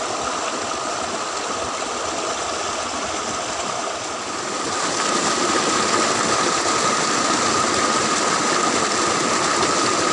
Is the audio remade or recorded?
recorded